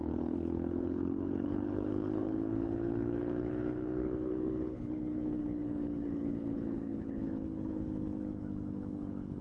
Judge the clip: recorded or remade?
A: remade